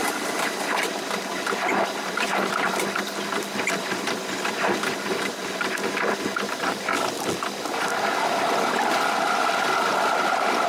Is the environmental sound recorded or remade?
remade